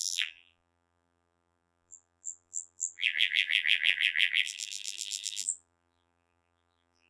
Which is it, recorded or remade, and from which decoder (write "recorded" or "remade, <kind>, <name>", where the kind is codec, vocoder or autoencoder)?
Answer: remade, vocoder, BigVGAN v2